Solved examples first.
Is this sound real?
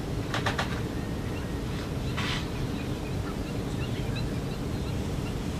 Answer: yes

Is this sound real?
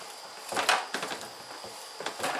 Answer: yes